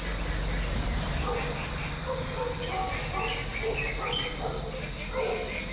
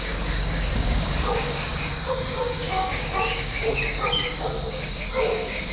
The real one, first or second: first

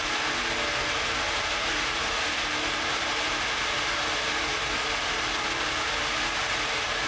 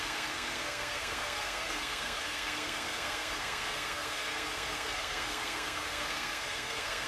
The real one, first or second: first